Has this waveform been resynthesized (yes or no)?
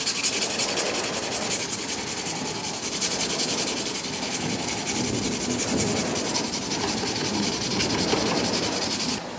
no